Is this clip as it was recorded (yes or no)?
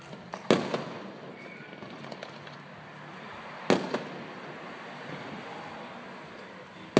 yes